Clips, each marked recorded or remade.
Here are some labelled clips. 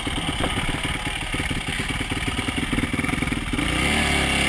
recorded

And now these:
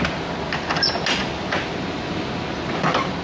recorded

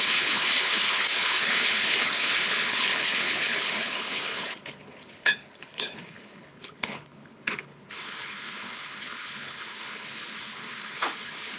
remade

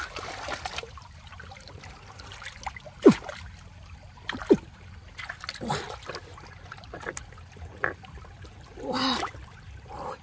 recorded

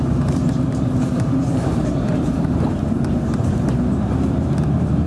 remade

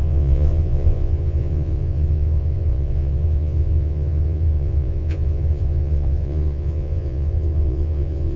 remade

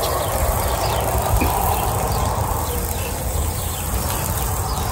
recorded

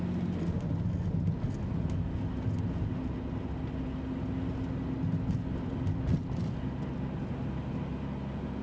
recorded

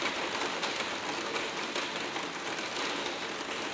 recorded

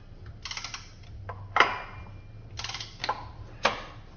recorded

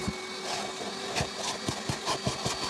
recorded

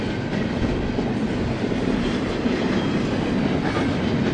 recorded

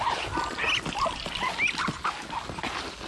recorded